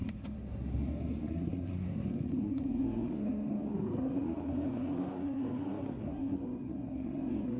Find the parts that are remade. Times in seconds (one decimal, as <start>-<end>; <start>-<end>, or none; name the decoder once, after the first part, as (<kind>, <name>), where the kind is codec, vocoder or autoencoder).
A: 0.0-7.6 (codec, SNAC)